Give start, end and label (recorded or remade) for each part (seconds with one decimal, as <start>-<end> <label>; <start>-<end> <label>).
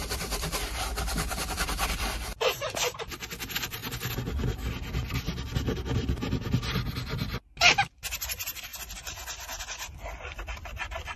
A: 0.0-3.8 remade; 3.8-7.6 recorded; 7.6-8.7 remade; 8.7-9.6 recorded; 9.6-11.2 remade